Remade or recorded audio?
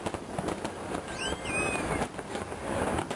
recorded